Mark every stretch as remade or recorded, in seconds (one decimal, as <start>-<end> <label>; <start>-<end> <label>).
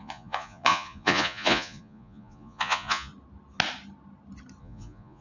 0.0-3.1 remade; 3.1-4.6 recorded; 4.6-5.2 remade